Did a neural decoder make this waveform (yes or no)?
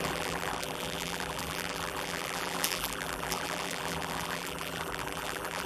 yes